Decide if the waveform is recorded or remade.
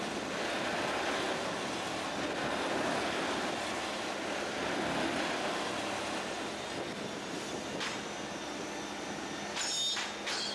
recorded